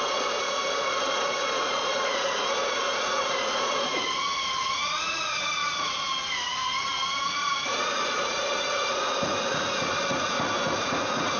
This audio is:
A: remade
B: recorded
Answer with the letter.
A